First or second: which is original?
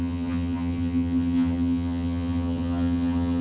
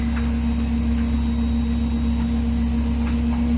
second